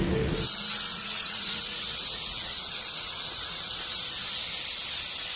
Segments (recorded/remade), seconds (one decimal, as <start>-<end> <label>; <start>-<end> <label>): 0.0-0.9 recorded; 0.9-3.8 remade; 3.8-5.4 recorded